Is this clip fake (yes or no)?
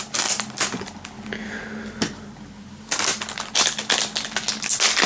no